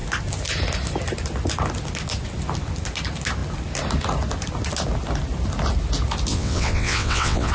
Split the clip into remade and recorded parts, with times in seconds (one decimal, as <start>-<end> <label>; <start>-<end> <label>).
0.0-6.3 recorded; 6.3-7.5 remade